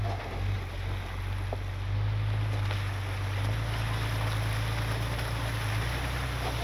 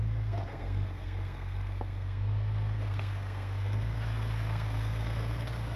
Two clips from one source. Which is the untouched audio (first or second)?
first